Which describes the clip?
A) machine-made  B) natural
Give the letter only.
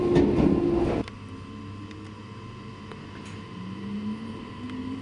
B